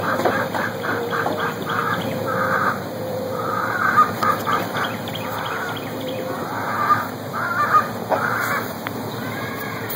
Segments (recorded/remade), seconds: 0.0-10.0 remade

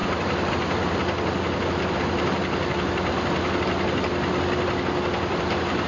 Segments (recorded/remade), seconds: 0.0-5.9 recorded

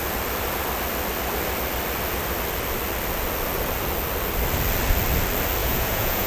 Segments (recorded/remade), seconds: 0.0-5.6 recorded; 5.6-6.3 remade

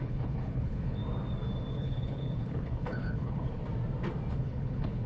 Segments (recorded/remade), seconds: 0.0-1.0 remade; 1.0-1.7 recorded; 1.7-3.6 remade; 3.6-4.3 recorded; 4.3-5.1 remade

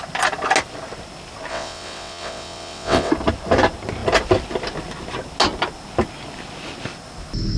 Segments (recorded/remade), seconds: 0.0-1.5 recorded; 1.5-3.1 remade; 3.1-7.6 recorded